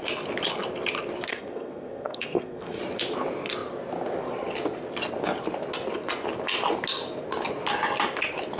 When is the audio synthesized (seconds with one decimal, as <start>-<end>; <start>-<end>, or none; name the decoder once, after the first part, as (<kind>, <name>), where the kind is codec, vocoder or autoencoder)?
1.3-2.8 (codec, SNAC)